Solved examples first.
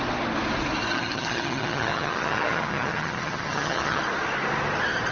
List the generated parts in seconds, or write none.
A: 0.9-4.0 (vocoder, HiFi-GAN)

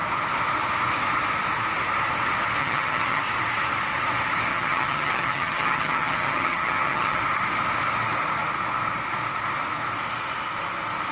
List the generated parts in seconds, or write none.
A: 2.6-3.2 (vocoder, HiFi-GAN); 4.5-7.2